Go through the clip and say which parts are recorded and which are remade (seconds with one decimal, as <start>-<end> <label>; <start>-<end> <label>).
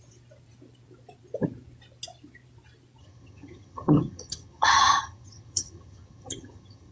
0.0-3.0 recorded; 3.0-6.9 remade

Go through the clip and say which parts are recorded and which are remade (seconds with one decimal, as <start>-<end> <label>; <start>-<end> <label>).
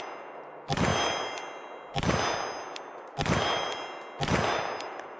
0.0-5.2 recorded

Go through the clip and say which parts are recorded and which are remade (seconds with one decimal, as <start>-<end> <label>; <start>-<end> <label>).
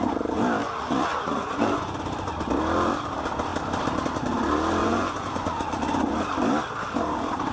0.0-0.6 recorded; 0.6-2.0 remade; 2.0-4.8 recorded; 4.8-6.1 remade; 6.1-7.5 recorded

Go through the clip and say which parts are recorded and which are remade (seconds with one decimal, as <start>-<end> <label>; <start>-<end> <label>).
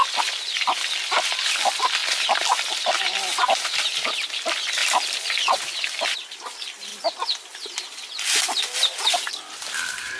0.0-2.0 remade; 2.0-4.3 recorded; 4.3-6.9 remade; 6.9-9.4 recorded; 9.4-10.2 remade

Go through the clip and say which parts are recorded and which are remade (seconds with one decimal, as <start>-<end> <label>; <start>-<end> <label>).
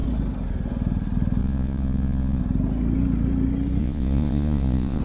0.0-1.4 recorded; 1.4-2.4 remade; 2.4-3.8 recorded; 3.8-5.0 remade